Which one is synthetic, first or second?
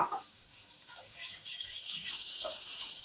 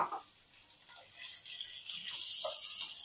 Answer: first